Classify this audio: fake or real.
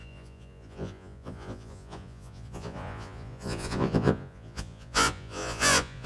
fake